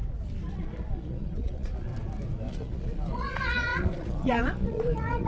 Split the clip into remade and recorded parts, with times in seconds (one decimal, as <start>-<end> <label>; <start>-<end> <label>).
0.0-0.5 recorded; 0.5-1.9 remade; 1.9-2.5 recorded; 2.5-5.3 remade